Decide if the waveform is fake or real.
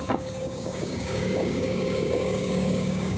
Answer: fake